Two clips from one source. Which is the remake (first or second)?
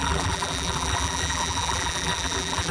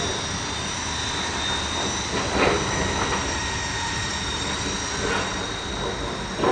first